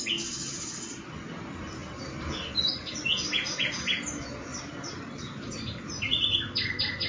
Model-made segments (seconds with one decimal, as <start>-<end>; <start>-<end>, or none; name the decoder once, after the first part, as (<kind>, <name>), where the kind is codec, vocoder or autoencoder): 0.4-1.1 (vocoder, BigVGAN v2); 4.5-6.1